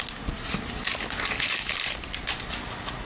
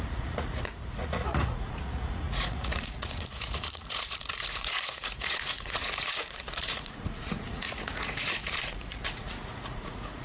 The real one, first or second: first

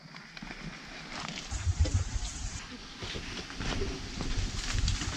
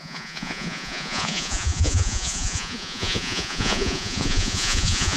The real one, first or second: first